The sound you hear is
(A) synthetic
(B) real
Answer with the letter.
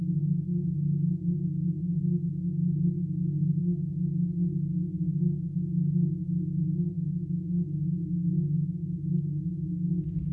B